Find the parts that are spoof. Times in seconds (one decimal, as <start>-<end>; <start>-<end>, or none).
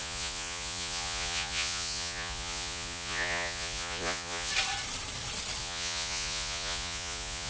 0.0-4.5; 5.6-7.5